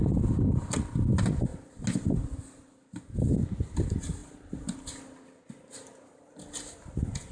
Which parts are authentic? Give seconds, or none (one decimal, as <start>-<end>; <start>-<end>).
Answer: 0.0-7.3